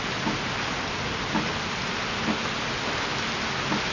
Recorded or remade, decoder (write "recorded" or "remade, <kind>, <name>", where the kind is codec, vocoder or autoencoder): recorded